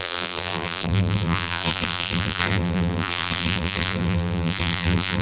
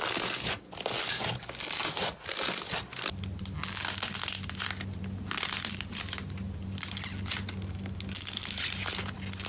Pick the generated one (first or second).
first